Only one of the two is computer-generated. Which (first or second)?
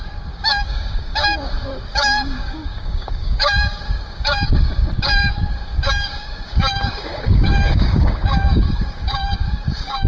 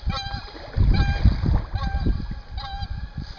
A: first